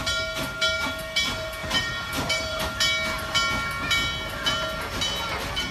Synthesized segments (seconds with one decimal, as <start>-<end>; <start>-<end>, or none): 1.6-2.6